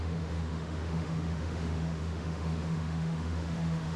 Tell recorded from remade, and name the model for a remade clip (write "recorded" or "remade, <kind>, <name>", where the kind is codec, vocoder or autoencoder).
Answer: remade, autoencoder, DAC-VAE